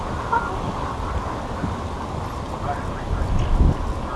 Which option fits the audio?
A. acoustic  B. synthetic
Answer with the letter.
A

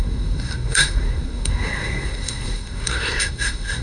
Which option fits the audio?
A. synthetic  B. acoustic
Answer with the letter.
A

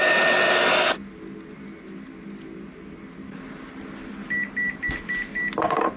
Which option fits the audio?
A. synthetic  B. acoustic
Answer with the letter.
B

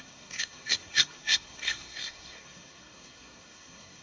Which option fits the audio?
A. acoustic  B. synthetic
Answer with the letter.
B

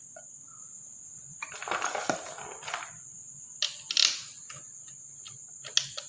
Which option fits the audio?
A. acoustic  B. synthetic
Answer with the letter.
A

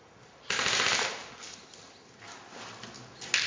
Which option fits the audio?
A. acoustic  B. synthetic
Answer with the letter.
A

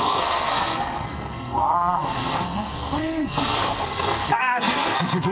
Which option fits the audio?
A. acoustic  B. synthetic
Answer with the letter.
B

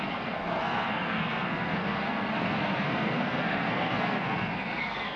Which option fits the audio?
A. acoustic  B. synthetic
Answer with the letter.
B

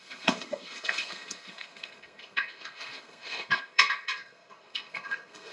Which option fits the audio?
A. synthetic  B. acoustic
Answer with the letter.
A